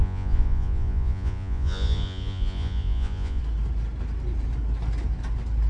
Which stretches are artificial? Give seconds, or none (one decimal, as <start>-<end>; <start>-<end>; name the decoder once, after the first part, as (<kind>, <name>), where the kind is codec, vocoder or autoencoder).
0.0-3.4 (vocoder, Vocos)